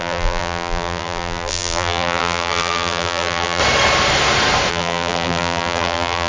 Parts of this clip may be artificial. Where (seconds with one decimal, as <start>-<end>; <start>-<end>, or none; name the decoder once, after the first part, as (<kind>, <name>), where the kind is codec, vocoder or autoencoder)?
0.0-3.6 (vocoder, BigVGAN v2); 4.7-6.3